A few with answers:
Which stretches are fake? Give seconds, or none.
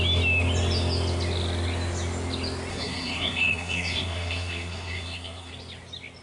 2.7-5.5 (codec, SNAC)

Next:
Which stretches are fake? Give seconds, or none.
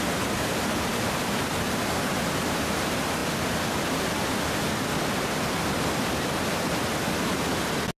none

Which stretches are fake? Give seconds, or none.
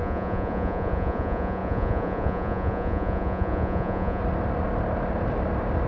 0.0-4.2 (vocoder, Vocos)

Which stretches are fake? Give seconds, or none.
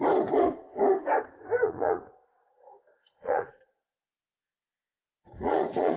1.6-3.6 (vocoder, Vocos); 4.7-6.0